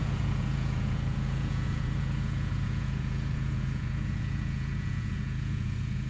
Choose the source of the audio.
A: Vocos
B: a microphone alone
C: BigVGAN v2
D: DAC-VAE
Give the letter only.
A